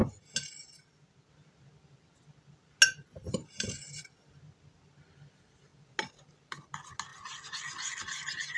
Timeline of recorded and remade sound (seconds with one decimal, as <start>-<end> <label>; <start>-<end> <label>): 0.0-8.6 recorded